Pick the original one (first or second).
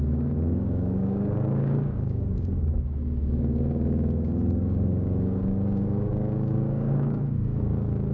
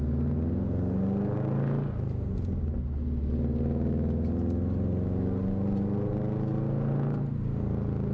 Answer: second